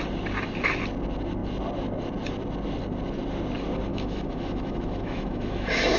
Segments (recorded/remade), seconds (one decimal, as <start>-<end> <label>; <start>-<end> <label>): 0.0-3.9 recorded; 3.9-6.0 remade